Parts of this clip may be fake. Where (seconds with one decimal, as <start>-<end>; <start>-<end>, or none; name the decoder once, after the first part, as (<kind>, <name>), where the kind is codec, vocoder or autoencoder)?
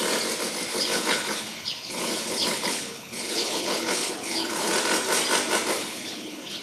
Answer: 0.7-4.7 (codec, HILCodec); 5.8-6.6